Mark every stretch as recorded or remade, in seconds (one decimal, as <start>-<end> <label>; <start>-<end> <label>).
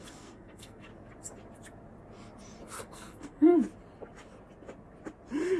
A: 0.0-0.9 remade; 0.9-2.8 recorded; 2.8-3.5 remade; 3.5-5.6 recorded